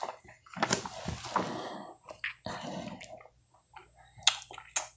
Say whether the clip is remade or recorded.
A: recorded